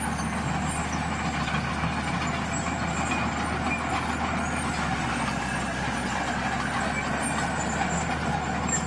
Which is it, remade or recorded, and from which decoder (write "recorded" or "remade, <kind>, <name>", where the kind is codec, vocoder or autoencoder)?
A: recorded